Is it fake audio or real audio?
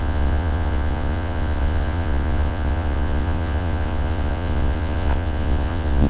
fake